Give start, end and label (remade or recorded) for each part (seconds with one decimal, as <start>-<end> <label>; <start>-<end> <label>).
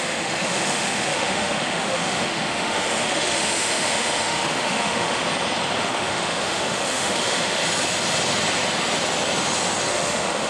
0.0-5.2 remade; 5.2-5.8 recorded; 5.8-7.6 remade; 7.6-9.9 recorded; 9.9-10.5 remade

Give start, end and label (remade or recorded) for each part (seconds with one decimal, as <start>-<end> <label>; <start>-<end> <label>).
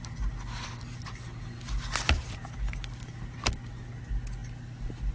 0.0-5.1 recorded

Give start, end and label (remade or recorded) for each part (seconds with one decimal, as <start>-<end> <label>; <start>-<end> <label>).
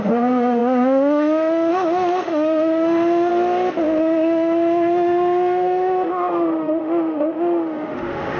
0.0-3.3 remade; 3.3-4.0 recorded; 4.0-8.4 remade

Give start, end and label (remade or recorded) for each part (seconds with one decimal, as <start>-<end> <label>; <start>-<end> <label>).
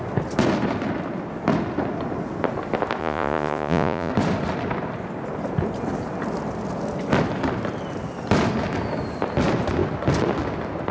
0.0-3.0 recorded; 3.0-4.1 remade; 4.1-10.9 recorded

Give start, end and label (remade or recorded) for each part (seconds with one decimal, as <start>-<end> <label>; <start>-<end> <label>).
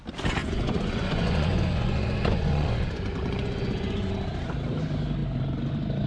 0.0-0.4 recorded; 0.4-4.1 remade; 4.1-6.1 recorded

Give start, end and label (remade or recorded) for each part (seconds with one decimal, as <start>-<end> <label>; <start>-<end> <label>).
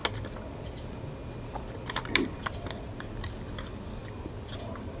0.0-5.0 recorded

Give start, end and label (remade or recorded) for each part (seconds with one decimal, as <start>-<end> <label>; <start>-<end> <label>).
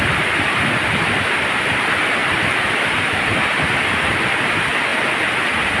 0.0-2.2 recorded; 2.2-4.5 remade; 4.5-5.8 recorded